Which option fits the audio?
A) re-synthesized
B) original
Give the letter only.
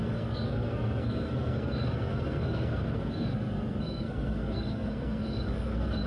A